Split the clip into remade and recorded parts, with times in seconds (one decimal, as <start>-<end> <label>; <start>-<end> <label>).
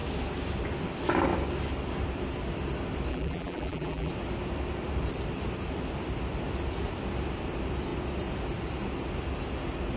0.0-3.1 recorded; 3.1-4.1 remade; 4.1-10.0 recorded